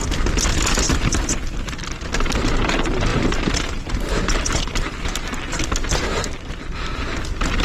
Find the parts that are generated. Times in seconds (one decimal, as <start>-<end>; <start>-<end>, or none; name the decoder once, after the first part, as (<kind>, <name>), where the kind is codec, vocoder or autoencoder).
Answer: 0.5-1.7 (vocoder, BigVGAN v2)